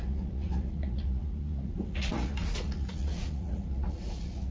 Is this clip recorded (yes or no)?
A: no